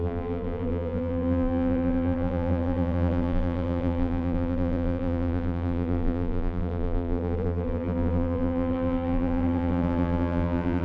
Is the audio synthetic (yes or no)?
yes